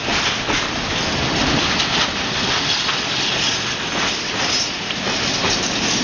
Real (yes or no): yes